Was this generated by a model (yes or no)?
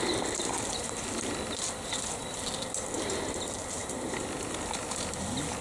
no